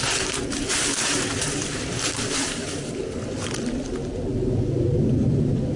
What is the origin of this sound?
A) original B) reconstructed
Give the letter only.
B